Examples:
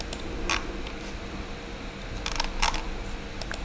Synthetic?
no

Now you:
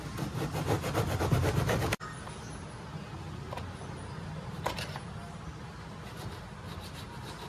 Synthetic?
no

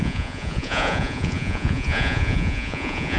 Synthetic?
yes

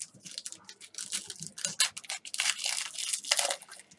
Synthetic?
no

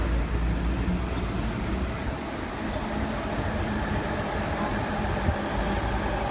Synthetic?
no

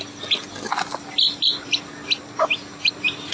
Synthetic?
no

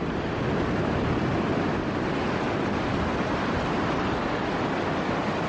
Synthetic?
no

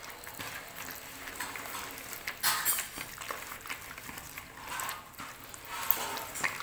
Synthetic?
no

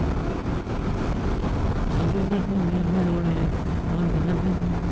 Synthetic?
no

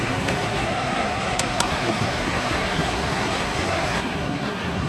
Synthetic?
yes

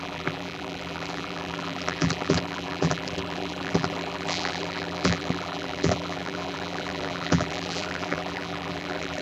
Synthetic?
yes